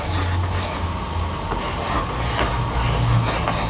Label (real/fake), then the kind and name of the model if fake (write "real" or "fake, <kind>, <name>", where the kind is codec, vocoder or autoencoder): real